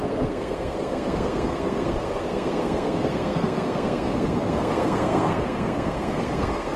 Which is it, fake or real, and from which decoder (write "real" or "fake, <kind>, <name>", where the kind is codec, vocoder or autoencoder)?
fake, codec, SNAC